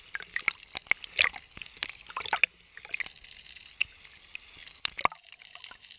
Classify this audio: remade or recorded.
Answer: recorded